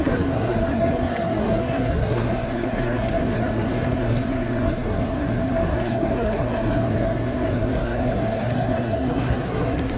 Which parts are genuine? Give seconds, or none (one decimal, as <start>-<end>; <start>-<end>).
none